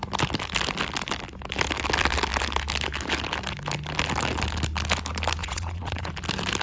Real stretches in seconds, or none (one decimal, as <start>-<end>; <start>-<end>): 0.0-5.4; 6.1-6.6